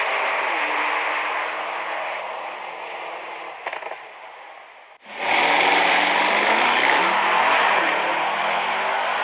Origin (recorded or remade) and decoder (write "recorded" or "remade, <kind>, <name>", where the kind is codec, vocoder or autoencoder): recorded